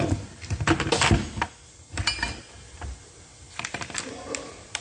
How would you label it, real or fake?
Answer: real